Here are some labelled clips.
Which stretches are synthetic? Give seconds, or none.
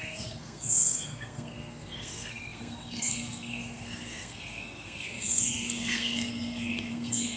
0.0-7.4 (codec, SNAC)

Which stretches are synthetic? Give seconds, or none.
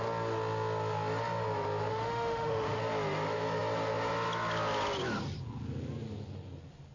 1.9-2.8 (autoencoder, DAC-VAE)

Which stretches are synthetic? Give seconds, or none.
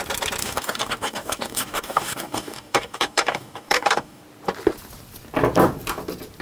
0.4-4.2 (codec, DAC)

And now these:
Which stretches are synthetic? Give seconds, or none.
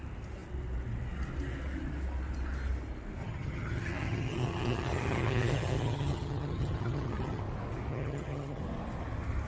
3.2-7.4 (vocoder, HiFi-GAN); 7.9-8.6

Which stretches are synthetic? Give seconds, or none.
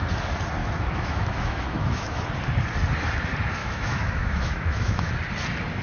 0.6-2.2 (autoencoder, DAC-VAE); 3.6-5.1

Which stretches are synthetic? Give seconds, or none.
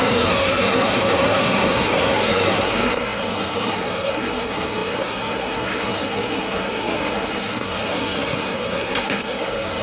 0.0-9.8 (codec, SNAC)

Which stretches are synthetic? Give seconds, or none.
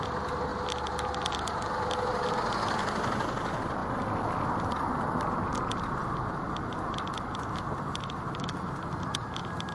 none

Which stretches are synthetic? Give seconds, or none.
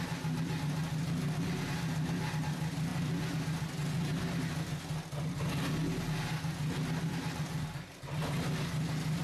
none